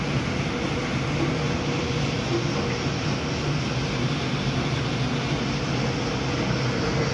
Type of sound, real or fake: real